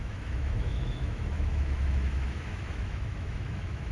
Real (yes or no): no